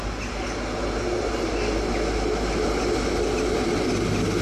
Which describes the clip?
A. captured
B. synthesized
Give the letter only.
A